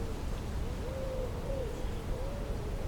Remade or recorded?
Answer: recorded